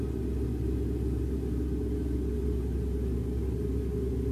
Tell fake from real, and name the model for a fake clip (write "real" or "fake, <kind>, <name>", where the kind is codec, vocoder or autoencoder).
real